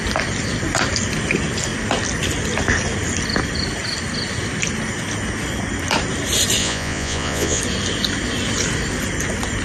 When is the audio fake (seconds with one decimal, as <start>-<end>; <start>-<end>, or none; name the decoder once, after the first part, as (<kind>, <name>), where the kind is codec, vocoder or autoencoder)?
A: 6.6-7.6 (vocoder, Vocos)